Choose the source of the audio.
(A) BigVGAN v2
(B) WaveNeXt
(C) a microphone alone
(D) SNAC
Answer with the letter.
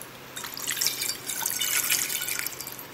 C